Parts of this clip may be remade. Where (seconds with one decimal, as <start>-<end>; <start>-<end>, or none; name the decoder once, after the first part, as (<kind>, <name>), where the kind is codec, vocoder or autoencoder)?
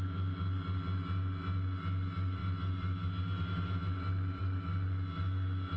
none